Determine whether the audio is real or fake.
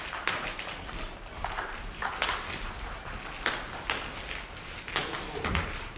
real